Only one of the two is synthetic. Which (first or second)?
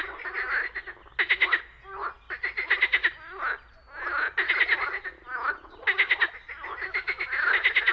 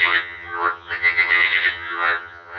second